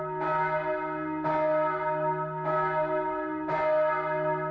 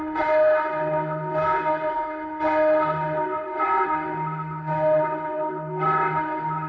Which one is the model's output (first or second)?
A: second